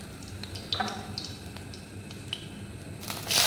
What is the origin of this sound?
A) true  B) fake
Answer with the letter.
A